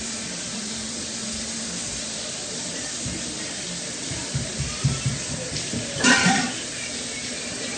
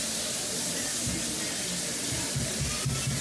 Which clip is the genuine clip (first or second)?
second